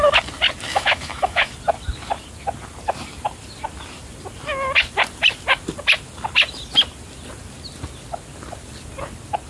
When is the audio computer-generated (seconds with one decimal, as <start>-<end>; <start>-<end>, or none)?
0.7-1.5